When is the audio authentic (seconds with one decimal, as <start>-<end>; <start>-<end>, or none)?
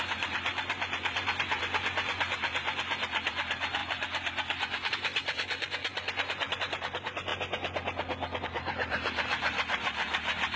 5.9-6.6; 7.3-8.4